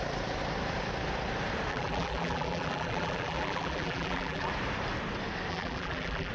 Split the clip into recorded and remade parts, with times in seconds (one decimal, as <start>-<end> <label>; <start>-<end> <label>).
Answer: 0.0-1.7 recorded; 1.7-4.5 remade; 4.5-5.5 recorded; 5.5-6.3 remade